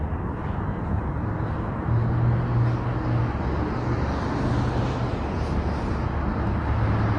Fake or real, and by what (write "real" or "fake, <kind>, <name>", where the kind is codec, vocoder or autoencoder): real